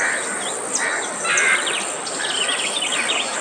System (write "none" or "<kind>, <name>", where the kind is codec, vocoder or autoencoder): none